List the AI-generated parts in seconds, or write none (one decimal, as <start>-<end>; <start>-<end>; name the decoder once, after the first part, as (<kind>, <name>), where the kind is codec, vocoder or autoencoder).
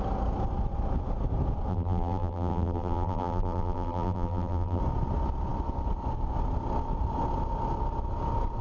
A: 1.7-4.8 (vocoder, BigVGAN v2)